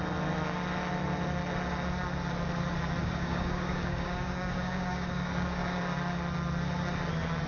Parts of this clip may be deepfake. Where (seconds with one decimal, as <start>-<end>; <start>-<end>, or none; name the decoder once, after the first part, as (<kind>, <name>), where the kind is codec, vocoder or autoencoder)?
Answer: 3.0-5.8 (codec, DAC)